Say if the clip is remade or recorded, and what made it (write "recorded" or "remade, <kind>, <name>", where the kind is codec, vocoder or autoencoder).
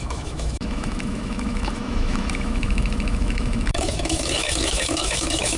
remade, autoencoder, DAC-VAE